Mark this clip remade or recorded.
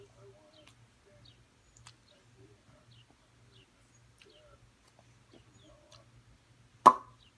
recorded